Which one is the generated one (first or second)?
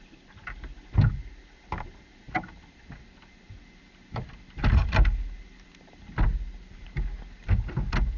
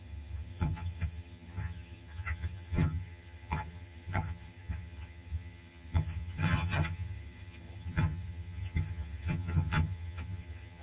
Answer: second